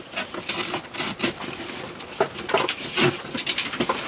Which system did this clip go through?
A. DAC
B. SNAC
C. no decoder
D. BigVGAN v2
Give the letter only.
C